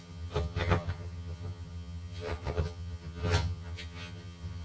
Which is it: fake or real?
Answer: fake